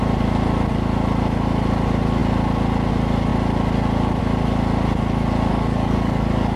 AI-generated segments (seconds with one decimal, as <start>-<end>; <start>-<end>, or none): 5.5-6.6